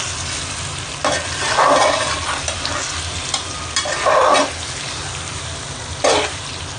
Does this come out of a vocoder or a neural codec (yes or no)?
no